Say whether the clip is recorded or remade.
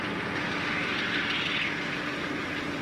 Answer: recorded